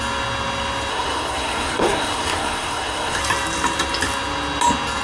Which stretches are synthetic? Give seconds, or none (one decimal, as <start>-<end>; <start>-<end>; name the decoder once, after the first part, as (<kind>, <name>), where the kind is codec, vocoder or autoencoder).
0.9-3.2 (codec, SNAC)